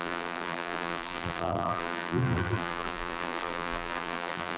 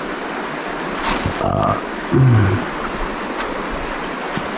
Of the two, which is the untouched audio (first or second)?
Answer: second